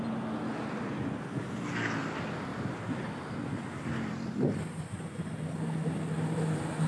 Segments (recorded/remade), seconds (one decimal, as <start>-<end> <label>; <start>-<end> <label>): 0.0-2.5 recorded; 2.5-4.6 remade; 4.6-6.9 recorded